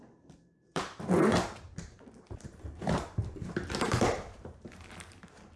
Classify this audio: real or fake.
fake